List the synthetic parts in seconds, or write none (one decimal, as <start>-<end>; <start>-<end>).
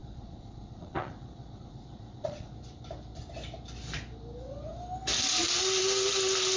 0.0-2.5